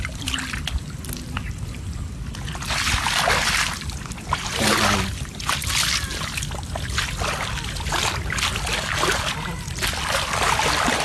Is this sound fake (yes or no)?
no